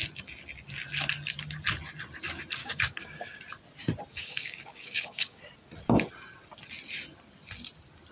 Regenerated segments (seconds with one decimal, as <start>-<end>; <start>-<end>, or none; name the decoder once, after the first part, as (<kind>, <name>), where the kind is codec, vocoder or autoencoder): 2.6-3.4 (codec, DAC); 4.1-5.4